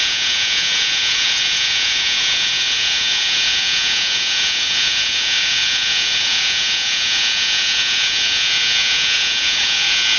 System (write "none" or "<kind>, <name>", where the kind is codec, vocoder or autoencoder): vocoder, Vocos